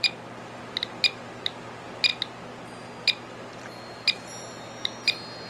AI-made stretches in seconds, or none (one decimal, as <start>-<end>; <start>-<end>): none